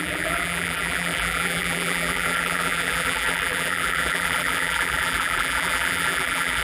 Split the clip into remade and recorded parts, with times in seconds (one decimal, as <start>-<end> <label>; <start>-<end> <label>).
0.0-6.6 remade